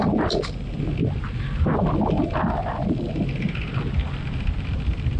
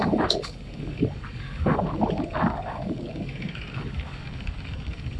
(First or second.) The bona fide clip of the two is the first